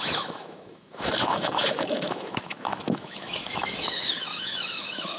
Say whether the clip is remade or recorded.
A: remade